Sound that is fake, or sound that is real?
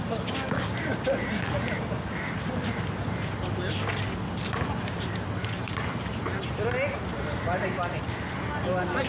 real